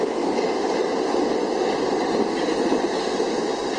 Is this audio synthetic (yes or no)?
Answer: no